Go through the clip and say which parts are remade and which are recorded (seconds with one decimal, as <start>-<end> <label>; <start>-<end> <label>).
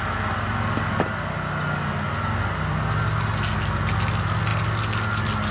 0.0-5.5 recorded